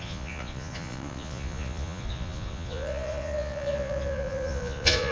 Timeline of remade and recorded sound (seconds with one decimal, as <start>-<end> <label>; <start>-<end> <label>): 0.0-5.1 remade